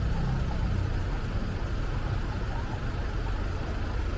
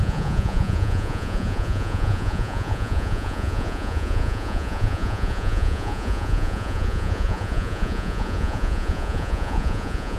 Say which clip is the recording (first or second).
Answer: first